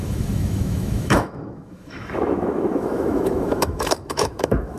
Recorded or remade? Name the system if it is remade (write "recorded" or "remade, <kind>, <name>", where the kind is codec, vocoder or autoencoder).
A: remade, autoencoder, DAC-VAE